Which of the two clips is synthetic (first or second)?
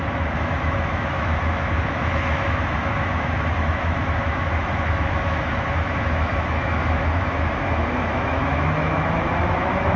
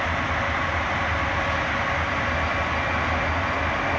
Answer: first